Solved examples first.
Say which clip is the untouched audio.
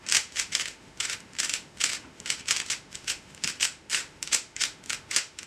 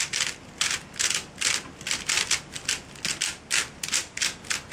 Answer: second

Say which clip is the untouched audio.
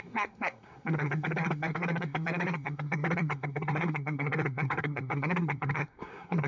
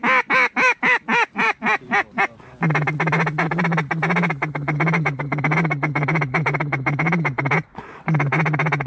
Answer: second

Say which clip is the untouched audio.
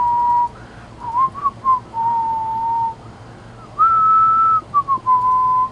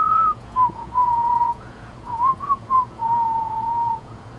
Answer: first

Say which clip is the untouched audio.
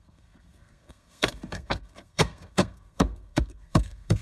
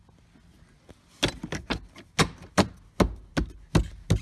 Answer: second